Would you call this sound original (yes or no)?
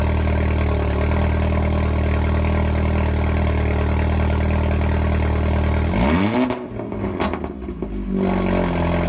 yes